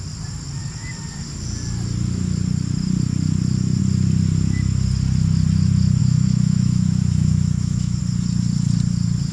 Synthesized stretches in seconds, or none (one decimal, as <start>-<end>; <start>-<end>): 6.0-8.0